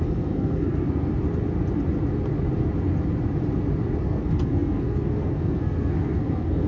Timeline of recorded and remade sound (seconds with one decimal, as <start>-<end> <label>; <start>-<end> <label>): 0.0-1.1 remade; 1.1-4.0 recorded; 4.0-6.7 remade